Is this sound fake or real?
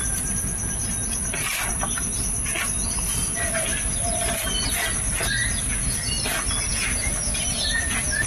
real